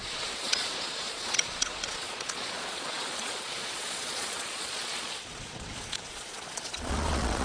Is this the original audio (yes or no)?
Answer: no